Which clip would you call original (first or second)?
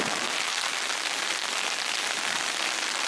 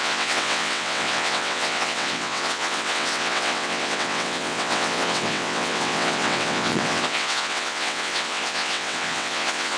first